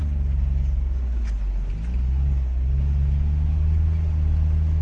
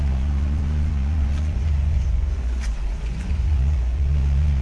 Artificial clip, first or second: second